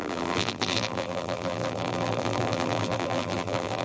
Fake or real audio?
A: fake